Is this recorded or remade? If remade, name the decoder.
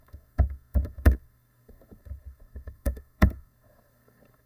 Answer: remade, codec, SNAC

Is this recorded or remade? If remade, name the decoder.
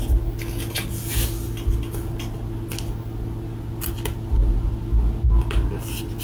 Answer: recorded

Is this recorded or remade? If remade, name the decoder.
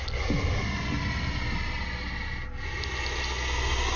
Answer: recorded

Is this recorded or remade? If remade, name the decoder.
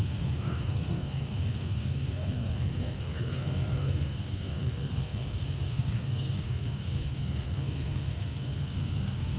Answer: remade, codec, SNAC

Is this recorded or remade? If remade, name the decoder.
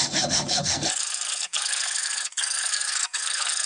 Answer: remade, codec, SNAC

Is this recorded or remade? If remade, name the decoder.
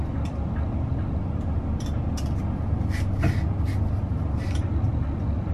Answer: recorded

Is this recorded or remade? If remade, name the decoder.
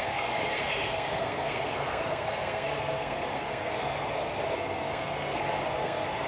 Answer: remade, codec, SNAC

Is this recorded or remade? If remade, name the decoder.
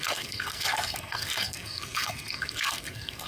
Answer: remade, codec, SNAC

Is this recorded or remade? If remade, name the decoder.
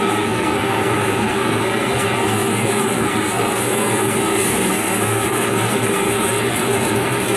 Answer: remade, codec, SNAC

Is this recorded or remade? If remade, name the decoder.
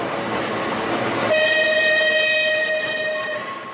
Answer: recorded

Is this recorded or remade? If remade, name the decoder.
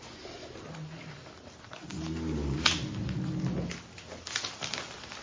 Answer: recorded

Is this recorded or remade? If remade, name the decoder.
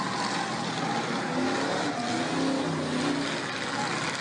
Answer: recorded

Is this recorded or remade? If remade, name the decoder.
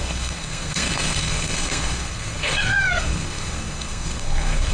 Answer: remade, codec, SNAC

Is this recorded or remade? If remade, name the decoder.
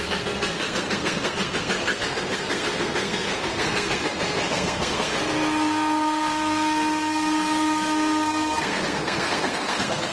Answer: remade, codec, SNAC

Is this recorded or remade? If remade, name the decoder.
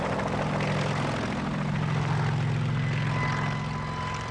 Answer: recorded